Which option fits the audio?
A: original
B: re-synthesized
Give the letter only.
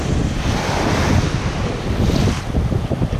A